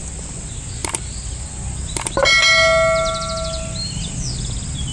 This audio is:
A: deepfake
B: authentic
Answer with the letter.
B